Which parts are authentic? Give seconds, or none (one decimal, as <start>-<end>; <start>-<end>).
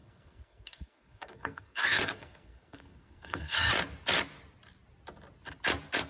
3.7-6.1